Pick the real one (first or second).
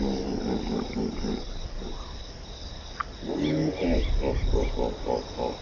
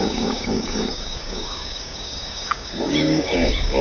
first